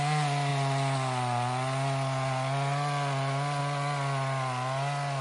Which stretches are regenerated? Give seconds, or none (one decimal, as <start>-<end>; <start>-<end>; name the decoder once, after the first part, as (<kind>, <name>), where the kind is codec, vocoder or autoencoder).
none